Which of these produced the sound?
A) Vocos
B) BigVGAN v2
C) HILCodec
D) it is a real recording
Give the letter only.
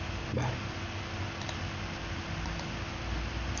D